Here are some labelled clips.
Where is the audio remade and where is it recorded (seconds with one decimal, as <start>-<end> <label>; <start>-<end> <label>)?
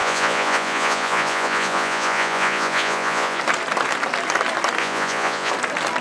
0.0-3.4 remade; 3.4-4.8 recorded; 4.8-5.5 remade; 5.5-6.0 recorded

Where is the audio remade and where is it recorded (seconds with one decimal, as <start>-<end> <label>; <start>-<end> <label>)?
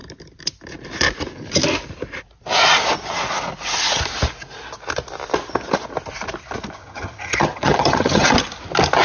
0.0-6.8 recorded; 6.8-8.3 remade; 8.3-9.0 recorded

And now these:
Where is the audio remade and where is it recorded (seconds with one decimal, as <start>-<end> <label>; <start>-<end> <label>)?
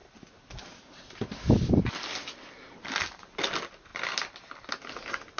0.0-5.4 recorded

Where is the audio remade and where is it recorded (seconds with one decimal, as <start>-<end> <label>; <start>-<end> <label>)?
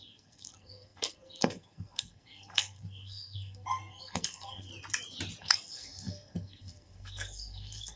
0.0-4.7 remade; 4.7-5.4 recorded; 5.4-8.0 remade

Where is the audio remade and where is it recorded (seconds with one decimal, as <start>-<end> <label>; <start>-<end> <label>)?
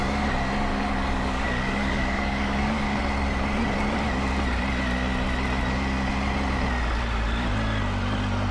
0.0-0.7 recorded; 0.7-3.0 remade; 3.0-8.5 recorded